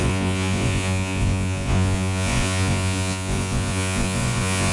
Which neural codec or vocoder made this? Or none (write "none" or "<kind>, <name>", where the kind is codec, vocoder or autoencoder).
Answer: vocoder, Vocos